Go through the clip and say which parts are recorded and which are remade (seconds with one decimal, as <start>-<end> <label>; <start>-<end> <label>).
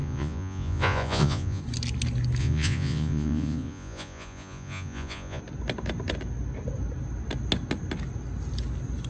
0.0-1.6 remade; 1.6-2.4 recorded; 2.4-5.4 remade; 5.4-9.1 recorded